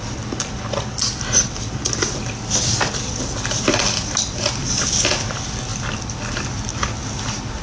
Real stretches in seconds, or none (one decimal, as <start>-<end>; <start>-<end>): 0.0-7.6